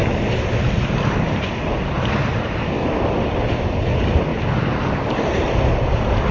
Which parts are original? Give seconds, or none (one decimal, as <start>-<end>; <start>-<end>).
0.0-6.3